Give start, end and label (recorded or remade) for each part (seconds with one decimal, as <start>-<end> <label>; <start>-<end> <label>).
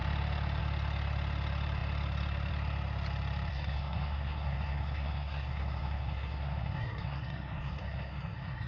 0.0-3.5 recorded; 3.5-8.7 remade